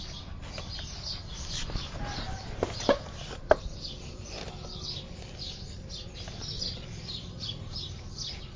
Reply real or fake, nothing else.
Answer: real